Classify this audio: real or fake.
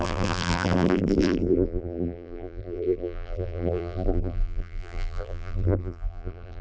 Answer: fake